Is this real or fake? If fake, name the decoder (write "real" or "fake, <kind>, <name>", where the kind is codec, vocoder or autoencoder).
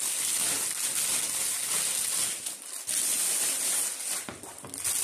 real